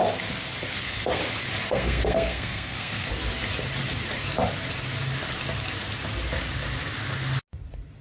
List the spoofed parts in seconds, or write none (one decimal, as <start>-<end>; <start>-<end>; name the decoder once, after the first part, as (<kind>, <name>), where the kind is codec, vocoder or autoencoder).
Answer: 0.7-1.2 (codec, SNAC); 1.7-3.1